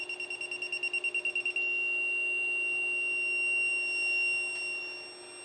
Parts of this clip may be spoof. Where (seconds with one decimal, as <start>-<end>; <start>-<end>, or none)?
none